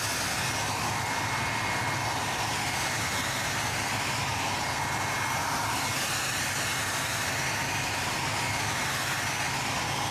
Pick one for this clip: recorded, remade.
recorded